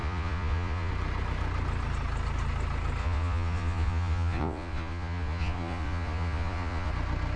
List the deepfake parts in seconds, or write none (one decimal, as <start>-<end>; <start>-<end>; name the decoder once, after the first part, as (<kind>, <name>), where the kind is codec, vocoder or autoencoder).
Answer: 0.0-0.9 (vocoder, Vocos); 3.0-6.9